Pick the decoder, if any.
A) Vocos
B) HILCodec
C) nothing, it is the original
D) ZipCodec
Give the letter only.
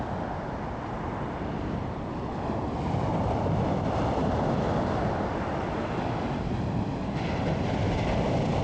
C